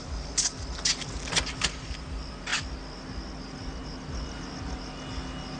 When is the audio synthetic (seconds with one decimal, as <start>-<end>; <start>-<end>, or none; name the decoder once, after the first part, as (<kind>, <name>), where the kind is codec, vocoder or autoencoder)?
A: none